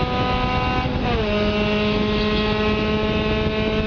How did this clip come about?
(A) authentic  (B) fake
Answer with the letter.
A